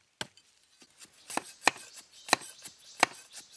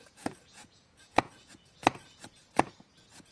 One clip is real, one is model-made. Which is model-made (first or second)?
second